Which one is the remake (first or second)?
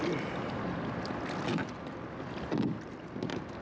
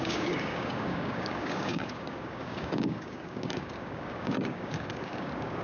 second